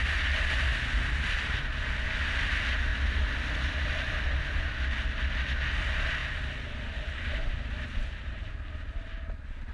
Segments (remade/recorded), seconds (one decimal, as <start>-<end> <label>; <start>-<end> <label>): 0.0-2.9 recorded; 2.9-4.4 remade; 4.4-6.2 recorded; 6.2-8.5 remade; 8.5-9.7 recorded